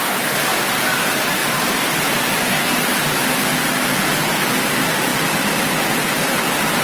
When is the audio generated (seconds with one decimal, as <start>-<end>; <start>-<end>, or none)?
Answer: 1.4-2.4; 5.1-6.2

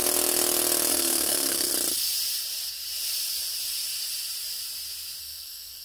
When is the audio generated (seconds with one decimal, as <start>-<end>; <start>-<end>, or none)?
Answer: 0.9-1.7; 5.2-5.8